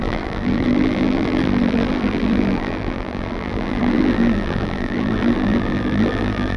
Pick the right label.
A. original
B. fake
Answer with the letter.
B